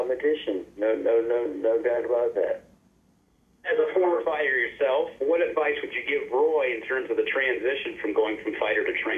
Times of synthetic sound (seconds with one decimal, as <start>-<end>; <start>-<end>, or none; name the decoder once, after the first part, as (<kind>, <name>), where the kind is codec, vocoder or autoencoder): 3.2-4.2 (codec, SNAC)